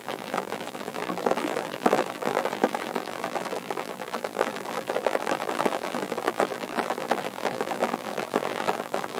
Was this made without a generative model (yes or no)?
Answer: no